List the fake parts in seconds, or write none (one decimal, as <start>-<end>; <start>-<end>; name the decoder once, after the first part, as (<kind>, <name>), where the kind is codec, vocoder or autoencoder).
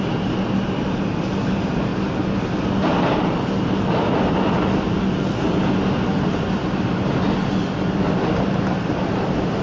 none